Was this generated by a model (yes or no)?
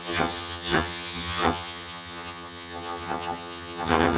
yes